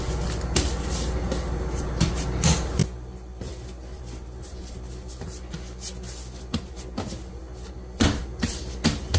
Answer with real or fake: real